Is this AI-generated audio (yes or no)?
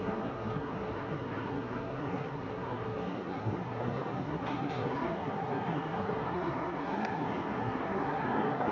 yes